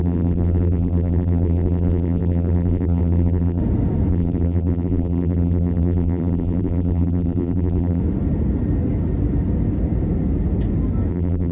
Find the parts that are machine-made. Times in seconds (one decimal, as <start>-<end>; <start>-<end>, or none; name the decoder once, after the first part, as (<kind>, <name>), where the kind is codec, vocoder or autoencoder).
0.0-3.6 (vocoder, BigVGAN v2); 4.1-8.0; 11.1-11.5